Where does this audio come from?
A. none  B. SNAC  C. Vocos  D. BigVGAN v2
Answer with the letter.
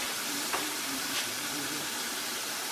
D